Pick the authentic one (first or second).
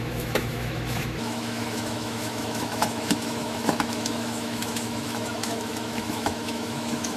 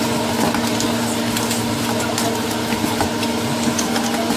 second